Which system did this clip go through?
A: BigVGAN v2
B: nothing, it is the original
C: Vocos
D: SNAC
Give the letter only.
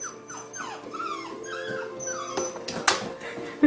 B